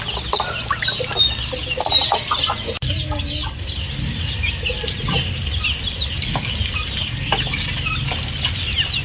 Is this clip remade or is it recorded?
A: recorded